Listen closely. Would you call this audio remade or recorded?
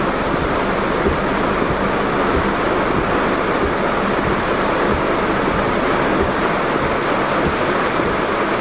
recorded